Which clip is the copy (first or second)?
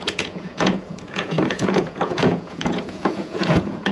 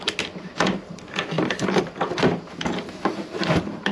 first